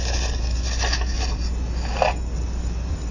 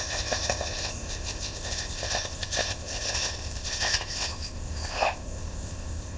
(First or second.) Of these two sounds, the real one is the first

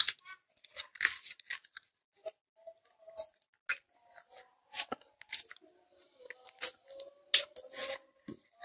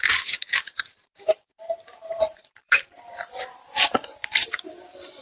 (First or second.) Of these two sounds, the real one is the first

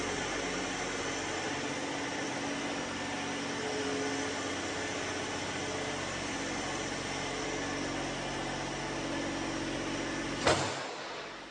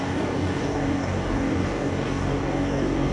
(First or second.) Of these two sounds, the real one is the first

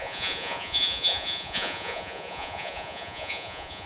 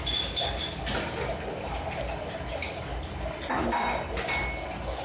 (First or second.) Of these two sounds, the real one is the second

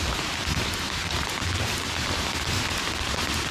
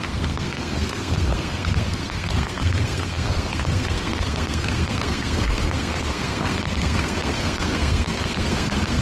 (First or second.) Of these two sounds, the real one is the first